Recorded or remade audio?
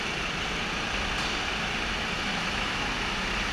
recorded